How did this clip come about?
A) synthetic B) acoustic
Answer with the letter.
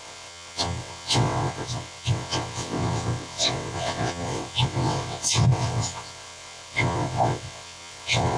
A